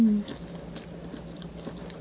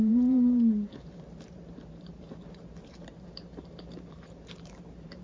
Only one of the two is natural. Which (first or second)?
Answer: first